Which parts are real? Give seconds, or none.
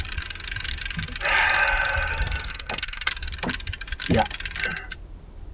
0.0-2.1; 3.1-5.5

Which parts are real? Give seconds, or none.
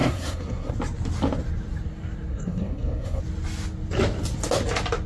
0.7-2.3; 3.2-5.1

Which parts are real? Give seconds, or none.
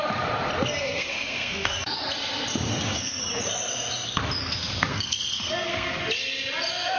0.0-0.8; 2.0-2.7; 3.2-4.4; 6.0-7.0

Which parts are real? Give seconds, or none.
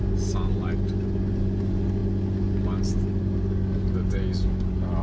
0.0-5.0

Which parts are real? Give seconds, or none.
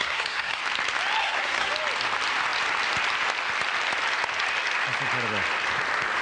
0.6-1.2; 1.7-6.2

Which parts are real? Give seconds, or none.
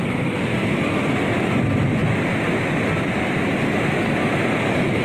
0.0-5.0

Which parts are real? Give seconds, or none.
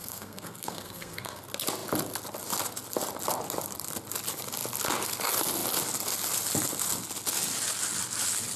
1.4-8.6